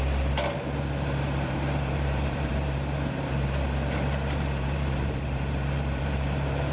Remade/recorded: remade